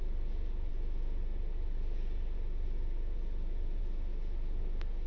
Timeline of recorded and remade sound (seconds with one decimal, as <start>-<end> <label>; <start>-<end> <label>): 0.0-5.1 recorded